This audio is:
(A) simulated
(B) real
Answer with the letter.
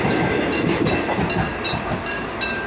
B